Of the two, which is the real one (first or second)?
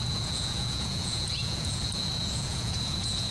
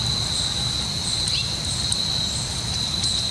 second